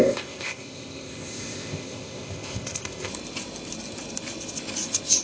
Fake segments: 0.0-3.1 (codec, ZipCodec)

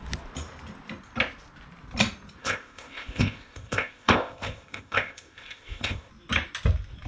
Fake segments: 2.4-6.1 (codec, ZipCodec)

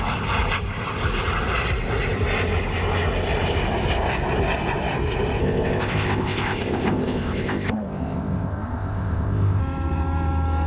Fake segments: 5.4-9.6 (codec, ZipCodec)

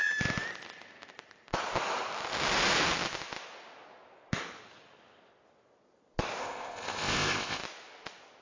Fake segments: 6.4-7.6 (codec, ZipCodec)